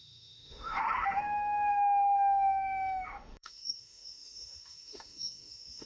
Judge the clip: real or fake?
fake